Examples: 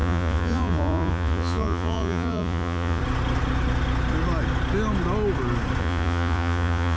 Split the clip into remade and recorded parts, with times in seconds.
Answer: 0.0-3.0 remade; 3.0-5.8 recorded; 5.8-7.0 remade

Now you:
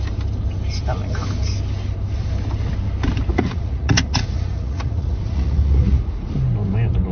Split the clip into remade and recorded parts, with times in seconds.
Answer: 0.0-3.3 recorded; 3.3-6.3 remade; 6.3-7.1 recorded

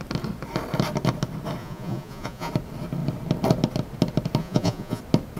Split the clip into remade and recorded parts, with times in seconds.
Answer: 0.0-1.6 recorded; 1.6-2.5 remade; 2.5-4.4 recorded; 4.4-5.0 remade; 5.0-5.4 recorded

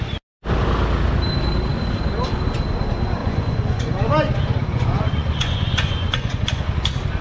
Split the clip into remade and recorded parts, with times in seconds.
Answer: 0.0-3.2 recorded; 3.2-4.1 remade; 4.1-4.7 recorded; 4.7-6.6 remade; 6.6-7.2 recorded